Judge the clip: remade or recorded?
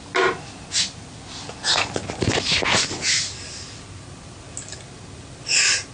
recorded